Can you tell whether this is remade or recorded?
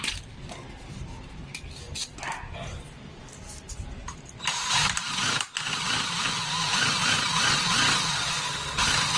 recorded